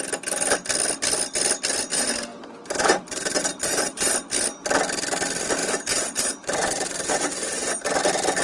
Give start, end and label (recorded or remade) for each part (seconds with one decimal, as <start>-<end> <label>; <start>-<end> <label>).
0.0-2.3 recorded; 2.3-4.1 remade; 4.1-5.6 recorded; 5.6-8.4 remade